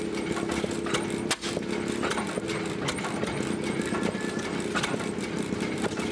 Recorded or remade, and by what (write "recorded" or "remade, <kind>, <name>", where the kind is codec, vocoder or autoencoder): recorded